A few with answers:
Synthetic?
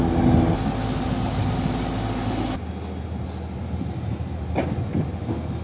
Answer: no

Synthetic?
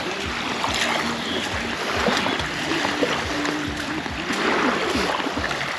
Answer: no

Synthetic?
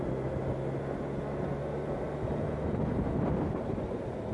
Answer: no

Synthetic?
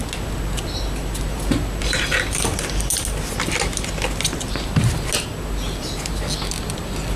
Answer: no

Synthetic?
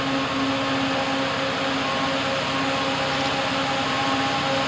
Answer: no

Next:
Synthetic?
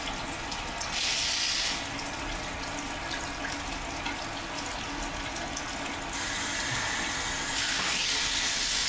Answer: no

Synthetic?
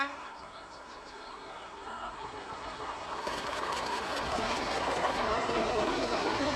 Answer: yes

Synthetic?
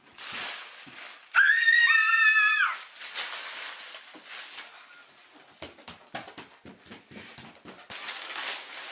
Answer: no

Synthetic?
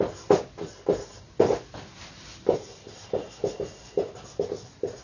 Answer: no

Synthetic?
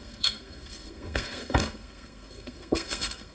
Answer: yes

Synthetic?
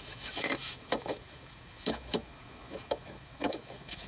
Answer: yes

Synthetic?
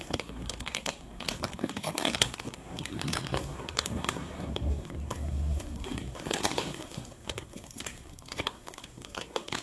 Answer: yes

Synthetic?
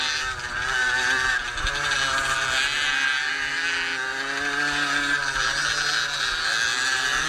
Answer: no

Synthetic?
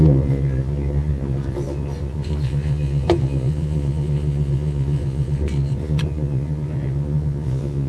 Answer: yes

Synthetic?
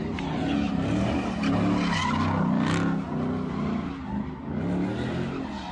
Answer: no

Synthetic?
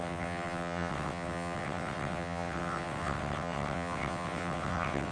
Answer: yes